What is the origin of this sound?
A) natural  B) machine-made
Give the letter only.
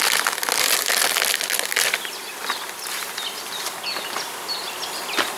A